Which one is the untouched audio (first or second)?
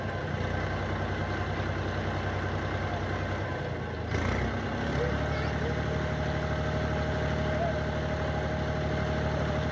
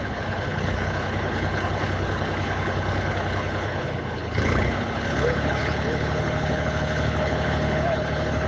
first